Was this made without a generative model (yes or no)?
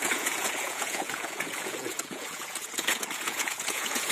no